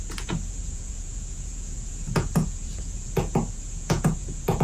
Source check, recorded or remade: remade